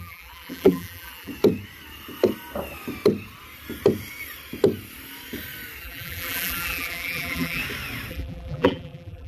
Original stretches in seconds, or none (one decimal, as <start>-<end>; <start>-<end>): 1.3-5.8; 7.6-8.1